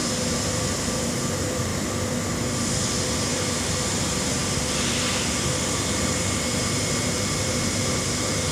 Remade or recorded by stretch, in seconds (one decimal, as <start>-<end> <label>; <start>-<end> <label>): 0.0-0.5 recorded; 0.5-1.7 remade; 1.7-3.1 recorded; 3.1-4.4 remade; 4.4-6.0 recorded; 6.0-8.5 remade